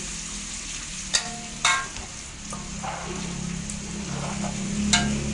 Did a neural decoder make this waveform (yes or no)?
no